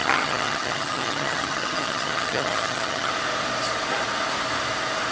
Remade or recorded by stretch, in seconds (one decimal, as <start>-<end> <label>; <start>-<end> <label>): 0.0-3.1 remade; 3.1-5.1 recorded